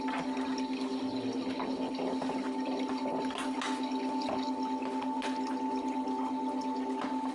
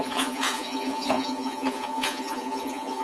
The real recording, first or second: first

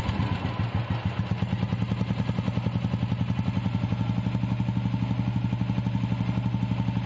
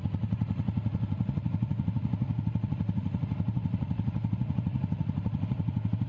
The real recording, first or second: first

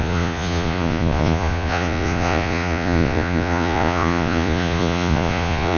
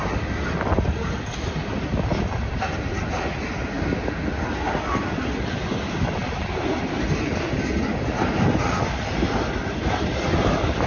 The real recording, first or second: second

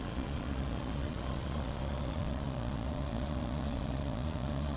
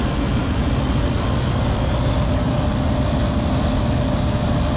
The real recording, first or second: second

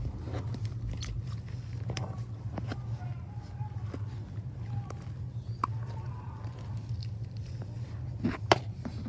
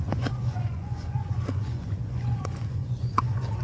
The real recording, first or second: first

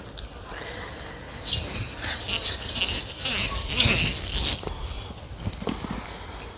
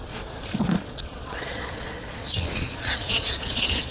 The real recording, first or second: first